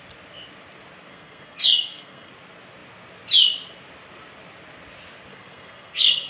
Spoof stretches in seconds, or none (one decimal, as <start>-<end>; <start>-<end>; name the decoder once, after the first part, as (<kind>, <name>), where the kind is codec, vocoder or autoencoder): 1.1-2.3 (codec, SNAC); 5.3-6.3